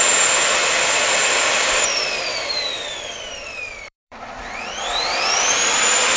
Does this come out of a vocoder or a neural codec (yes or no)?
yes